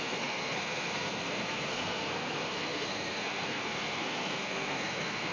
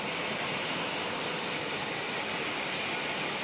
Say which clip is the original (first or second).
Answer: second